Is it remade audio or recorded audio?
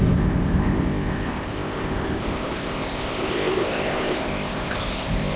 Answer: remade